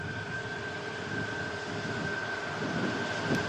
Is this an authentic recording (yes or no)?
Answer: yes